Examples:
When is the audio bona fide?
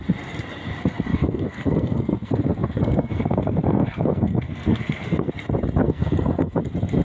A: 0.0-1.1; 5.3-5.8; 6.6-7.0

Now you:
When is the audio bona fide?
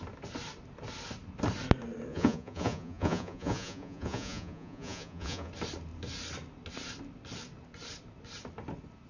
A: 0.0-2.1; 5.5-9.1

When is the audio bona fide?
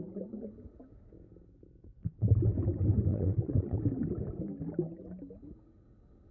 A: 0.0-3.1; 3.8-6.3